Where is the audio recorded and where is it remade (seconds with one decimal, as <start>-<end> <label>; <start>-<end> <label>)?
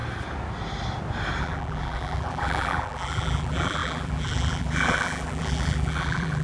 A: 0.0-1.4 recorded; 1.4-6.4 remade